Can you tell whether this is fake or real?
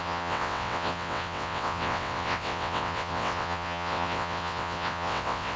fake